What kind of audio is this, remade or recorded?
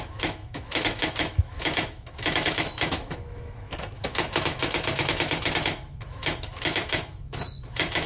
remade